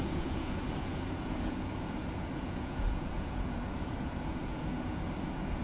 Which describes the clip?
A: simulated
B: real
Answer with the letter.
A